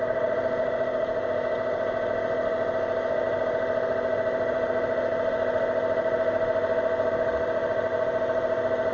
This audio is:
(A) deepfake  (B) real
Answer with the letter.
B